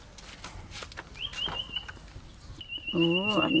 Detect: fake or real real